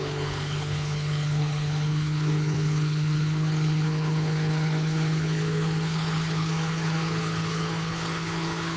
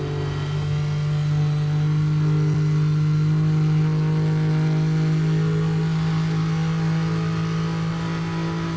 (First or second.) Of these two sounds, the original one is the second